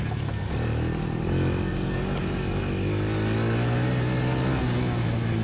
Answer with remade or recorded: recorded